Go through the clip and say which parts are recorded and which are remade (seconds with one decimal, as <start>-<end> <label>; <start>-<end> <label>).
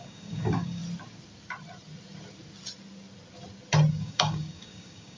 0.0-0.8 remade; 0.8-3.9 recorded; 3.9-5.2 remade